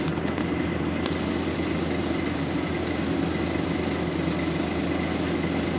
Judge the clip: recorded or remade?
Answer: recorded